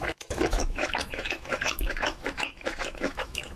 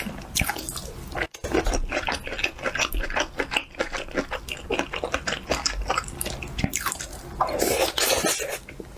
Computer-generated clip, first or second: first